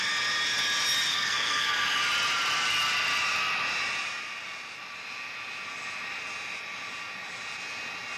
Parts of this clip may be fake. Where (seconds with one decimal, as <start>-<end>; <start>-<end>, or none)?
1.1-2.0

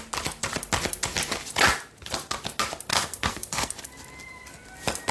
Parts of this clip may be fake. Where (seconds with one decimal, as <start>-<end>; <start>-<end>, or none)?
2.9-3.8

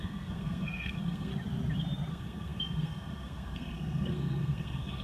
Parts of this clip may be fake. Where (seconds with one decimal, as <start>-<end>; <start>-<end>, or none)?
0.0-1.3; 2.1-5.0

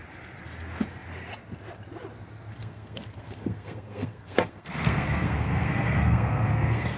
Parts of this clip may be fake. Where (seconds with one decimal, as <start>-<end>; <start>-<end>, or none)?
2.6-7.0

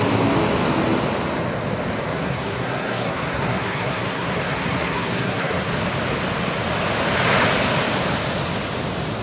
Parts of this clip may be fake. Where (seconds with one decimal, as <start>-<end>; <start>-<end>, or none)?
2.1-5.7

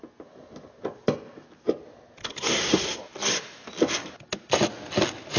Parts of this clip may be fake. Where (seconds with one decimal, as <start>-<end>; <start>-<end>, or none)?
2.2-3.0

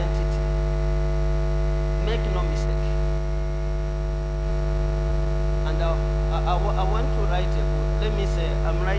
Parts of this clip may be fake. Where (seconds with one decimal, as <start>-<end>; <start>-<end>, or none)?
none

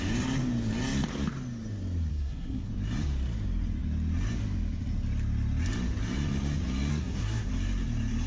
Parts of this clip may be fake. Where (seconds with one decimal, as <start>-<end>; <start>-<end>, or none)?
2.1-2.7; 6.9-7.5